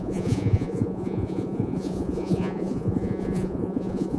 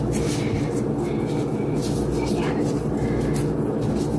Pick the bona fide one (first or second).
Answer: second